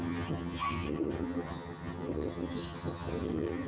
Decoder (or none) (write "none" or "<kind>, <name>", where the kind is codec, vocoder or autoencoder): vocoder, HiFi-GAN